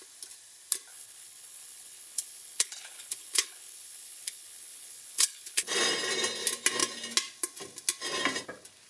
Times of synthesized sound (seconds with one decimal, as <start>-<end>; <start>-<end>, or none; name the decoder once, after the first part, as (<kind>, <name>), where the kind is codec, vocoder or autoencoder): 0.9-5.7 (codec, HILCodec)